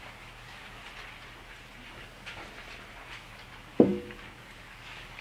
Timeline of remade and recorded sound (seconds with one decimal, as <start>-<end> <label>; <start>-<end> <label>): 0.0-0.8 remade; 0.8-1.9 recorded; 1.9-2.4 remade; 2.4-3.1 recorded; 3.1-5.2 remade